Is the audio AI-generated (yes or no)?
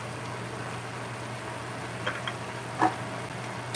no